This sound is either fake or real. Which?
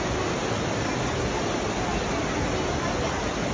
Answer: real